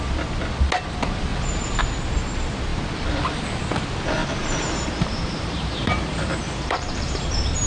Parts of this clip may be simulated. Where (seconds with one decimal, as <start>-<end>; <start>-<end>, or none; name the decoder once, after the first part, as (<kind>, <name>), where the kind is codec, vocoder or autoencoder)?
4.2-7.7 (vocoder, BigVGAN v2)